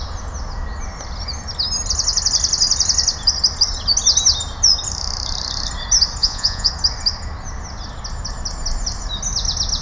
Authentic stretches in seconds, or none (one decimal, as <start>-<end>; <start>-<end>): 0.0-6.2; 6.7-9.8